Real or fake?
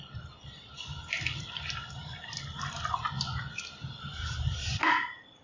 fake